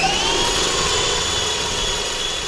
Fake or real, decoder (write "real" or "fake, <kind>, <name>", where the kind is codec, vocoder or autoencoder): fake, vocoder, WaveNeXt